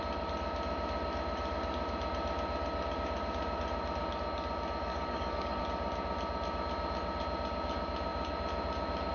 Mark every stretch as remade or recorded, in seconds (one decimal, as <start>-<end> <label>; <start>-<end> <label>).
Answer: 0.0-4.9 recorded; 4.9-5.6 remade; 5.6-9.1 recorded